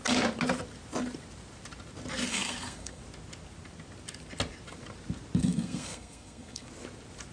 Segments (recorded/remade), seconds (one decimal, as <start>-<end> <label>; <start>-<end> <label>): 0.0-2.3 recorded; 2.3-3.0 remade; 3.0-5.4 recorded; 5.4-6.7 remade; 6.7-7.3 recorded